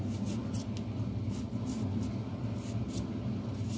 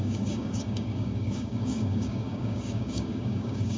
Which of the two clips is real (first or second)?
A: first